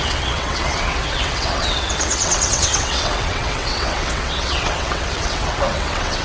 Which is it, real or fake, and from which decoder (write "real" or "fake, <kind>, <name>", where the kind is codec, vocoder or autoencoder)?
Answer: fake, vocoder, WaveNeXt